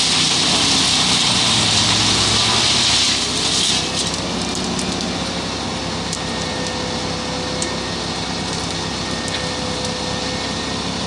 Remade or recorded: recorded